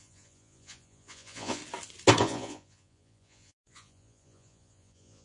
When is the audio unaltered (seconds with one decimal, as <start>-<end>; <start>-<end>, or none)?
1.6-2.2